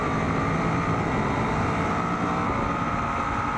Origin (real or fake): real